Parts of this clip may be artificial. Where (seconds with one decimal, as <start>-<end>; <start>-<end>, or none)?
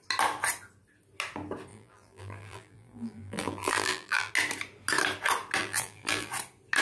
1.7-4.3; 5.6-6.3